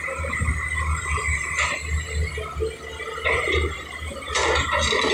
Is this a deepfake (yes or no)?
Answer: no